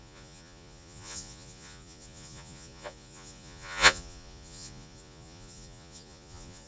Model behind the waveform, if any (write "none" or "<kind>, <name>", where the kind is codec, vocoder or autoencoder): vocoder, Vocos